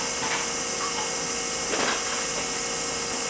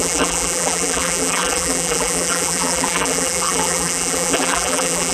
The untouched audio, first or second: first